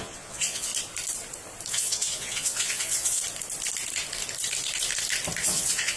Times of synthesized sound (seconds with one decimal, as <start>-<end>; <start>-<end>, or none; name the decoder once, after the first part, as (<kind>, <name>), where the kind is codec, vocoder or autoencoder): 0.0-0.7 (vocoder, Vocos); 1.7-3.2; 5.4-6.0